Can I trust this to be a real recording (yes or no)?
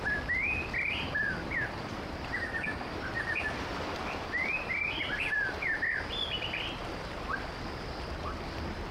no